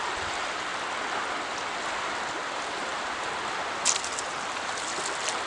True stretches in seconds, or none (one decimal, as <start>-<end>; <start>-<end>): 0.0-5.5